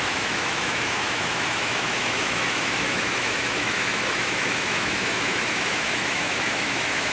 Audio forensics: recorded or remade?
remade